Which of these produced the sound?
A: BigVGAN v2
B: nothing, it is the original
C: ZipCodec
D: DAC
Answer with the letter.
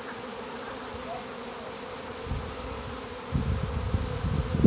B